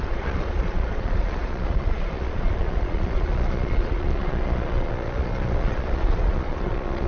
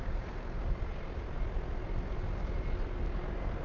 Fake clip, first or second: first